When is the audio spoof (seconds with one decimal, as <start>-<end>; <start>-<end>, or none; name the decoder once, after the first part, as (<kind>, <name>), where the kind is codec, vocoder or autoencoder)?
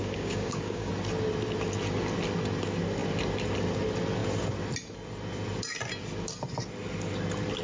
0.0-0.9 (codec, DAC)